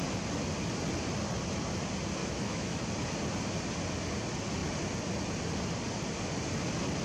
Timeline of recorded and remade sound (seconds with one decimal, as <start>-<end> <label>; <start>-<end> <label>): 0.0-2.2 recorded; 2.2-2.8 remade; 2.8-7.0 recorded